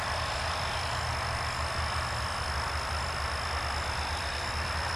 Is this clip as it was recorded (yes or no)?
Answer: yes